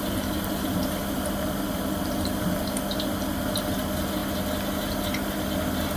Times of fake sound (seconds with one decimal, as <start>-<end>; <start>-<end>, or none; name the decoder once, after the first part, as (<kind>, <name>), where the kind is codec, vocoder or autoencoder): 0.0-4.2 (vocoder, BigVGAN v2)